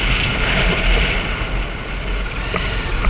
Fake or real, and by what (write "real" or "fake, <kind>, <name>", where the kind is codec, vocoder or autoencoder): real